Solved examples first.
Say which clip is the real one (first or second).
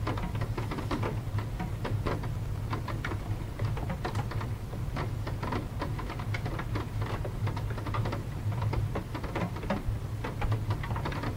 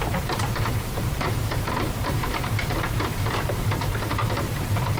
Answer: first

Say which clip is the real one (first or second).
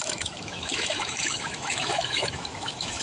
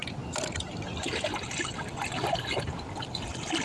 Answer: second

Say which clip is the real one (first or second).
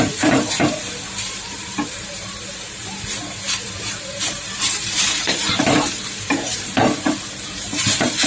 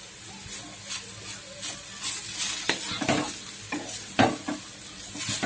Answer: second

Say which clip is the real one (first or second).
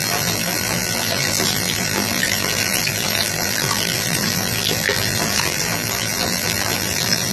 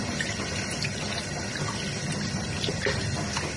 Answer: second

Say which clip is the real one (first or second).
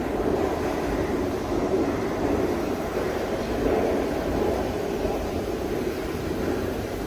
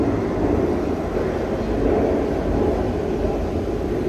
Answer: second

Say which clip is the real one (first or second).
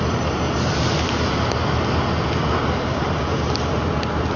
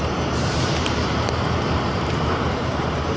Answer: first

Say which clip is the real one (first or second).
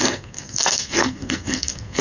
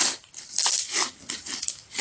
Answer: second